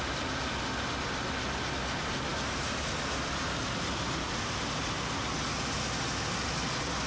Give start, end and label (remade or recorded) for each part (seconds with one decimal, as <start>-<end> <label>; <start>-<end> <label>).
0.0-7.1 recorded